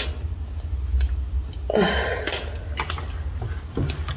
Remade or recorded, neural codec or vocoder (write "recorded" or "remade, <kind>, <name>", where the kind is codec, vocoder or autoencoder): recorded